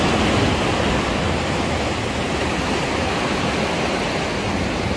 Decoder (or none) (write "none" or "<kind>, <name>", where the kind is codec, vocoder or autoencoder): none